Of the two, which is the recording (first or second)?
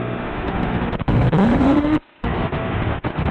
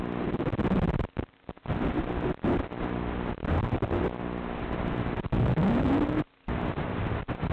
second